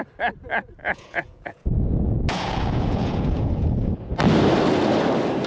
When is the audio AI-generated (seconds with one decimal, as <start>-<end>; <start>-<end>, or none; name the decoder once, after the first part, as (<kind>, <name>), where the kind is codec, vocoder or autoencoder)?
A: 0.8-4.1 (vocoder, Vocos)